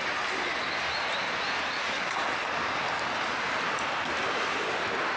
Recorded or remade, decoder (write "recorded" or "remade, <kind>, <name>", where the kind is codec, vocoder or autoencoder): recorded